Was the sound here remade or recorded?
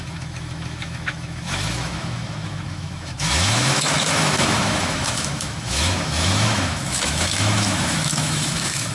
remade